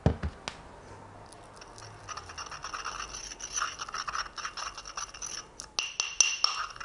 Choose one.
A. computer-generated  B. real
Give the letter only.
B